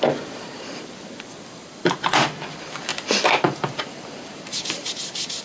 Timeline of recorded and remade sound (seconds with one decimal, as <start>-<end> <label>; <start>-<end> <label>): 0.0-5.4 recorded